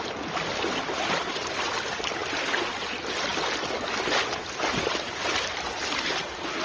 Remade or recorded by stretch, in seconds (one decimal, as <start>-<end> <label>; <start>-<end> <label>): 0.0-6.6 recorded